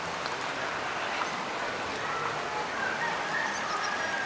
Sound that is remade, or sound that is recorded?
recorded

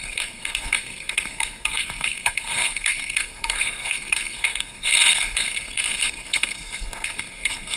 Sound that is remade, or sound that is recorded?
remade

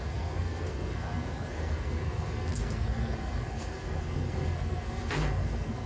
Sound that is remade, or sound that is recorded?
remade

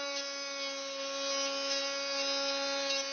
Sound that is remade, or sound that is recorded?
recorded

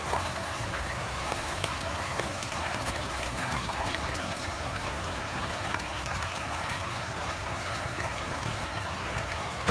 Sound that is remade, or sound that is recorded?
remade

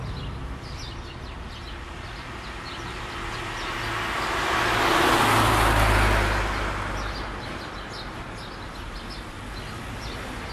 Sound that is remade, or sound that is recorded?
recorded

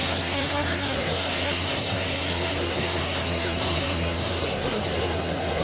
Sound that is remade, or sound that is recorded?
remade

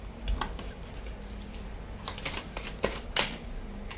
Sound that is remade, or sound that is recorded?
recorded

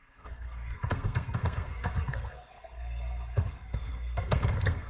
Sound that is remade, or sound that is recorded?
remade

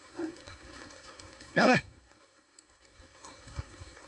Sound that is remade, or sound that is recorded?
remade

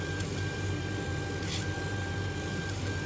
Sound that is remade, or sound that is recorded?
recorded